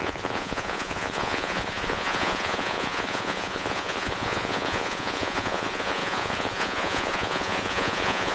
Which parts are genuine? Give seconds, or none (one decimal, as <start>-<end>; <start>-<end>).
none